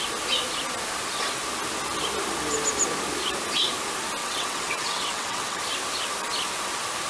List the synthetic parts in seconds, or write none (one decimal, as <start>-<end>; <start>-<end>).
4.2-5.6